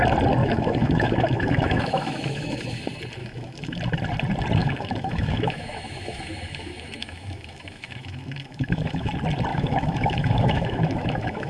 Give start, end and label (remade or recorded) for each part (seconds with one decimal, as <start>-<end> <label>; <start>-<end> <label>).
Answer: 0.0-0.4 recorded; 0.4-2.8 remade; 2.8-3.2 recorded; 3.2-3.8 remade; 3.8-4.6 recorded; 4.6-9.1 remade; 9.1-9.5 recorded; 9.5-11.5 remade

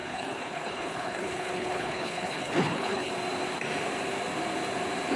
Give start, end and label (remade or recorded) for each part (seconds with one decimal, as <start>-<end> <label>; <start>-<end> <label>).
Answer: 0.0-3.1 remade; 3.1-5.2 recorded

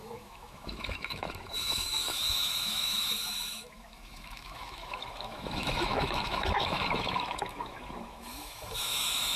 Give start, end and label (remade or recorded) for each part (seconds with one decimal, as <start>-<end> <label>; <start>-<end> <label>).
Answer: 0.0-9.4 remade